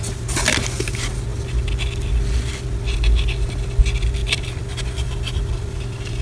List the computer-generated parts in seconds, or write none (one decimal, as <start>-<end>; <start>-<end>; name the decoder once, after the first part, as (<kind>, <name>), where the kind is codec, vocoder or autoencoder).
4.2-5.8 (vocoder, BigVGAN v2)